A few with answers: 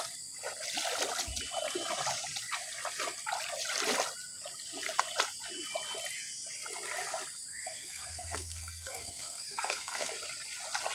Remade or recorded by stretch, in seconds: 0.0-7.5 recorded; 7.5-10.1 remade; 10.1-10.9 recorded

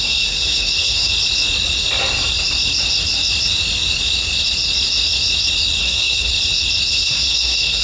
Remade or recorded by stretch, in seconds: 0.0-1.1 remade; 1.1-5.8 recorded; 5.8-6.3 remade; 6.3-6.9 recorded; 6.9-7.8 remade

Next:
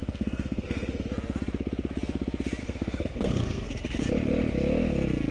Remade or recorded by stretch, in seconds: 0.0-1.0 remade; 1.0-2.6 recorded; 2.6-4.0 remade; 4.0-5.3 recorded

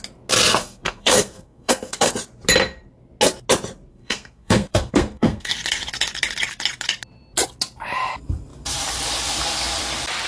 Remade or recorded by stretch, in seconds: 0.0-0.6 recorded; 0.6-2.1 remade; 2.1-3.9 recorded; 3.9-5.5 remade; 5.5-10.3 recorded